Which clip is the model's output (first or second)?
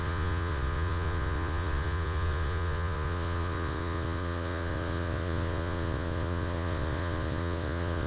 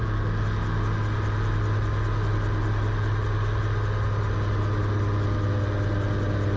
first